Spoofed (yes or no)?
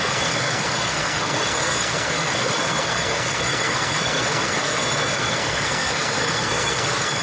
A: yes